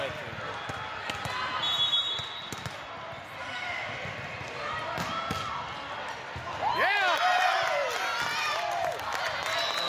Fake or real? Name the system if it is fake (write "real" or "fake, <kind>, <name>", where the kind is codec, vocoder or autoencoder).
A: real